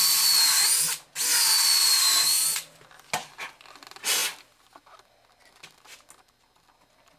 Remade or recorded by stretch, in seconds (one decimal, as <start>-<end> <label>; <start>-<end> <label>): 0.0-7.2 recorded